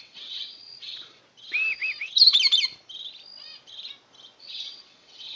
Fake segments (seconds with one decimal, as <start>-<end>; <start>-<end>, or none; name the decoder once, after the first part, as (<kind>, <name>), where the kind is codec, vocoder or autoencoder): 0.0-1.2 (vocoder, WaveNeXt); 4.4-5.4